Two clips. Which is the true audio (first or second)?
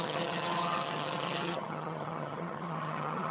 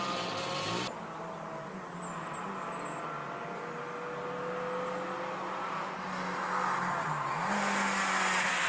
second